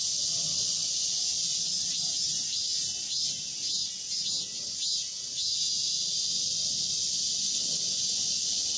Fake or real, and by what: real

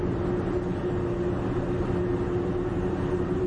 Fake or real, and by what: real